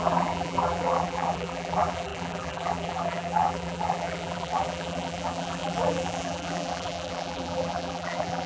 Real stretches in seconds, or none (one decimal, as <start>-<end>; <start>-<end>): none